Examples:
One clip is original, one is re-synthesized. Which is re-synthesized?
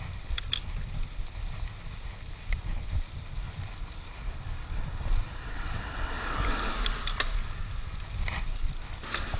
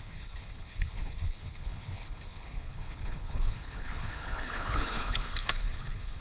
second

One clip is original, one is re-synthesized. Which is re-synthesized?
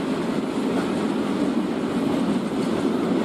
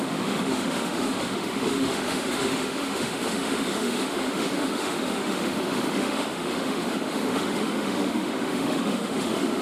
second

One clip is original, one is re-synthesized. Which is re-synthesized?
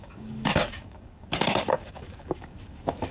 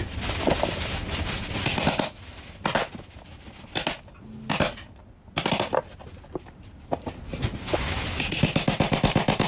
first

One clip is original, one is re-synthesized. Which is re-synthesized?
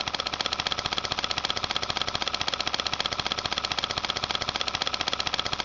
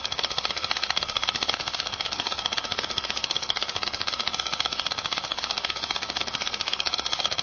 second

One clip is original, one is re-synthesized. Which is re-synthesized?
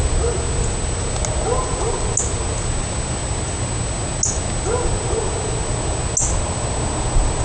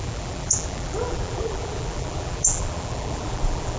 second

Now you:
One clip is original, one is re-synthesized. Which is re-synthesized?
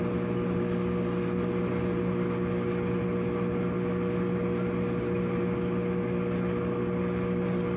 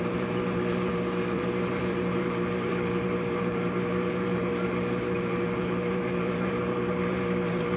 second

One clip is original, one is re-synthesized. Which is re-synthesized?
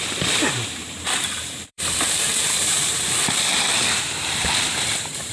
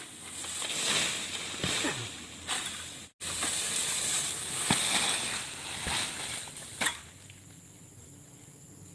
first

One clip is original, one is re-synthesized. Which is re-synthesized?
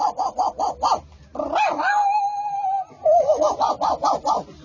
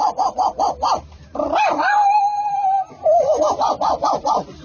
second